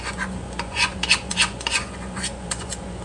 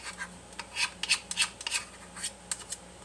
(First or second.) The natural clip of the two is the second